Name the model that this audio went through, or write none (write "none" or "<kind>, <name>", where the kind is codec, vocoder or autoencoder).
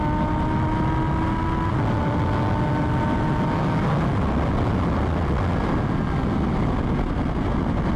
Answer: none